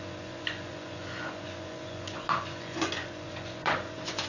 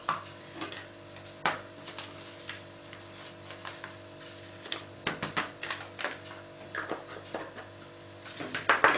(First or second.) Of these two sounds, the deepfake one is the first